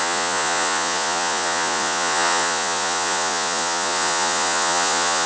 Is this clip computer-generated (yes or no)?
yes